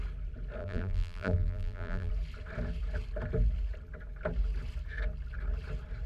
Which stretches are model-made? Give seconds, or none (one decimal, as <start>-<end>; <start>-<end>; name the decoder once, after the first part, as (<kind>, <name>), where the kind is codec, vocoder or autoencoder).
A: 0.6-2.1 (vocoder, BigVGAN v2)